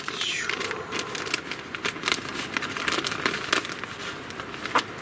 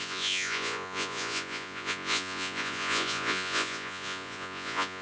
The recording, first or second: first